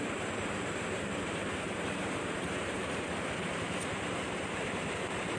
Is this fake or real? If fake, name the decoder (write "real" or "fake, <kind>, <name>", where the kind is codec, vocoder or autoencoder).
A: fake, vocoder, BigVGAN v2